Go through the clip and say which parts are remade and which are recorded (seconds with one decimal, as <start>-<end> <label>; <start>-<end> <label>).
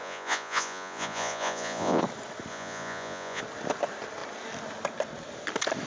0.0-2.0 remade; 2.0-2.5 recorded; 2.5-3.4 remade; 3.4-5.9 recorded